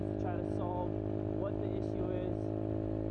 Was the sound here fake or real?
real